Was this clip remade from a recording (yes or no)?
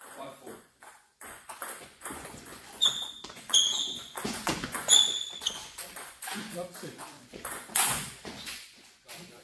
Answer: yes